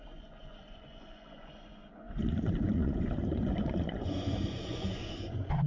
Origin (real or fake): fake